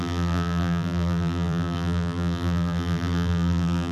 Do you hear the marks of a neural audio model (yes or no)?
yes